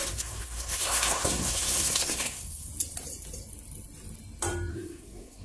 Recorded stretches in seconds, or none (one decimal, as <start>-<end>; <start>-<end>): 2.7-4.7